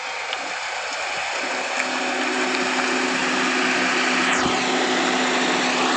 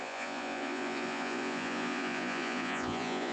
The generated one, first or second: second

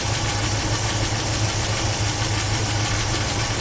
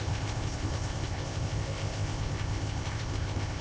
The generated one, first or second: second